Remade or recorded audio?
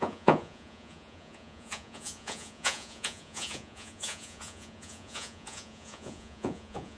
remade